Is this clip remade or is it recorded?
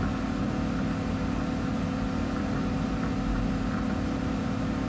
recorded